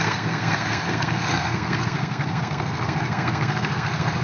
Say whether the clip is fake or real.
fake